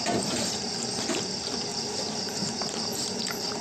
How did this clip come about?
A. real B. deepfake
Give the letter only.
B